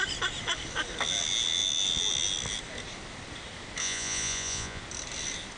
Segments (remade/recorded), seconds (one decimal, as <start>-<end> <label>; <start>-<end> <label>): 0.0-3.8 recorded; 3.8-4.8 remade; 4.8-5.6 recorded